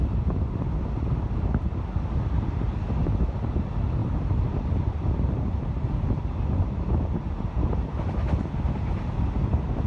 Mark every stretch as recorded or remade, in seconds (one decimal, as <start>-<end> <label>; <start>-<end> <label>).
0.0-4.0 recorded; 4.0-7.0 remade; 7.0-9.9 recorded